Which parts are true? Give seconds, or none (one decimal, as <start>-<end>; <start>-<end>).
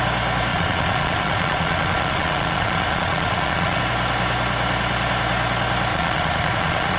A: 0.0-0.5; 3.8-5.9